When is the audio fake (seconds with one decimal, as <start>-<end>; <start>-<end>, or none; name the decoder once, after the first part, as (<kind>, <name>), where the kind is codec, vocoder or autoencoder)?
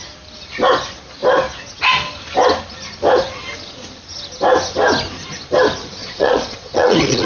6.0-7.3 (vocoder, Vocos)